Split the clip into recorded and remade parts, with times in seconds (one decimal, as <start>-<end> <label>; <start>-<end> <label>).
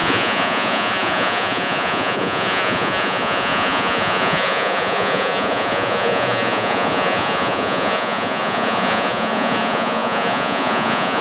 0.0-11.2 remade